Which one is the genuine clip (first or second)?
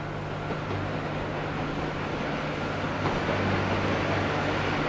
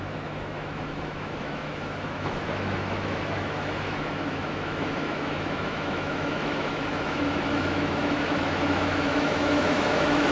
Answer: first